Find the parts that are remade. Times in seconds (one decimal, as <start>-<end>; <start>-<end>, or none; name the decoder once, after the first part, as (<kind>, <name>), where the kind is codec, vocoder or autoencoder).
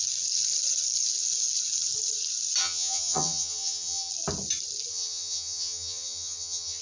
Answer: 2.6-4.1 (vocoder, HiFi-GAN); 4.9-6.8